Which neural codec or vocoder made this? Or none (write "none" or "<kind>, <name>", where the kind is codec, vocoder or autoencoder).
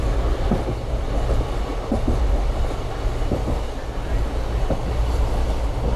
none